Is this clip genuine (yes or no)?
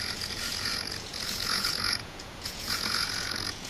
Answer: no